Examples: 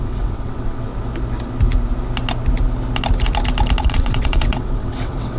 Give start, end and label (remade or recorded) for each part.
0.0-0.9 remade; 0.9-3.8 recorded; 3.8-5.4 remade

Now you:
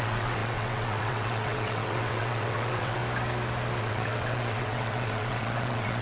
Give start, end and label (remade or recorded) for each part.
0.0-3.0 remade; 3.0-3.8 recorded; 3.8-6.0 remade

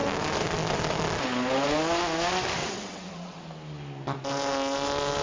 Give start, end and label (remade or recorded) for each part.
0.0-2.6 recorded; 2.6-3.4 remade; 3.4-5.2 recorded

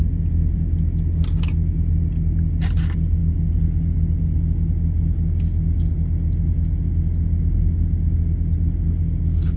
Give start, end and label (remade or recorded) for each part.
0.0-9.6 recorded

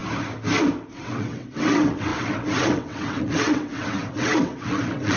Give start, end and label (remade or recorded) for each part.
0.0-0.9 recorded; 0.9-5.2 remade